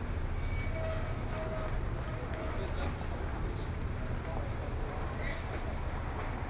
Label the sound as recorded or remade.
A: recorded